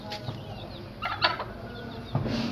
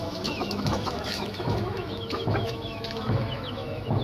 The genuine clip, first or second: first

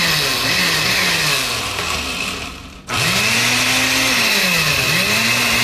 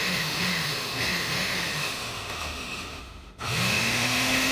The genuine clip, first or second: first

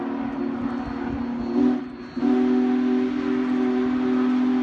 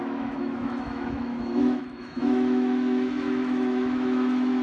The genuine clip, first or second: first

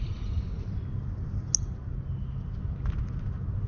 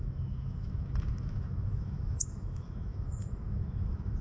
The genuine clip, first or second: first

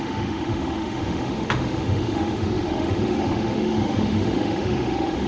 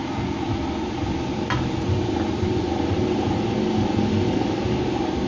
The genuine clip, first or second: second